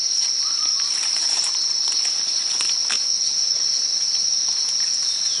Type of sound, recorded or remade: recorded